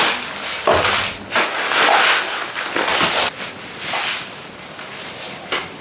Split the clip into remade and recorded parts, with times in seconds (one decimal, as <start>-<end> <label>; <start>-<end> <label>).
0.0-5.8 recorded